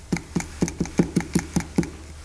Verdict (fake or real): real